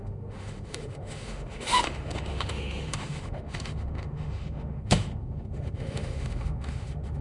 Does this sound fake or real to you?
fake